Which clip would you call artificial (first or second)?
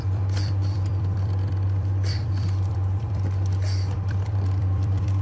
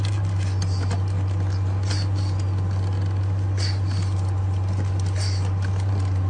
first